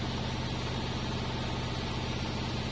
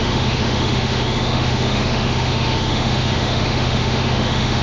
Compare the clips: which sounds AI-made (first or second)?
second